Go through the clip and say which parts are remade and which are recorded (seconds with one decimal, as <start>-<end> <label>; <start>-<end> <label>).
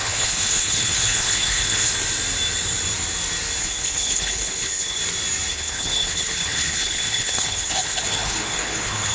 0.0-1.9 remade; 1.9-3.6 recorded; 3.6-5.0 remade; 5.0-5.5 recorded; 5.5-9.1 remade